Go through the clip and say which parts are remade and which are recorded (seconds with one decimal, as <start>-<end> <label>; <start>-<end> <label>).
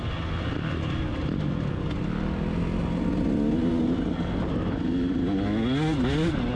0.0-6.6 recorded